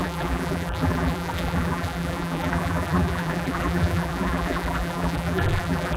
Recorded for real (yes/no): no